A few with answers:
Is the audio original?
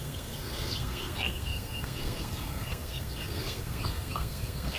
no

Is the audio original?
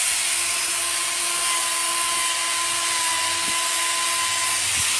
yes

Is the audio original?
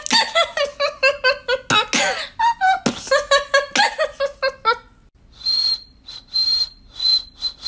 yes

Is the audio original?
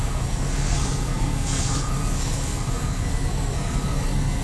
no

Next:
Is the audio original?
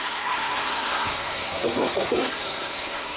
no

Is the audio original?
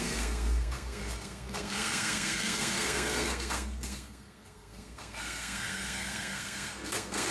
no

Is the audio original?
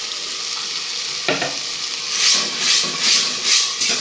yes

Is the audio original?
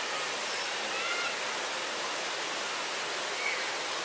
yes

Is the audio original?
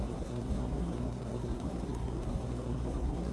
no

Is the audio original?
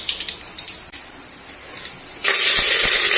yes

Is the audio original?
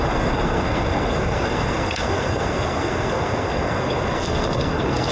no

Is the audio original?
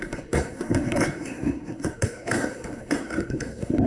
no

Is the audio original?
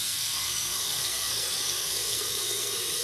no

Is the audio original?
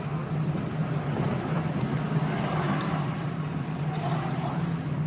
yes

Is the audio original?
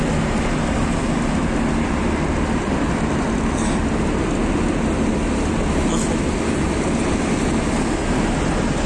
yes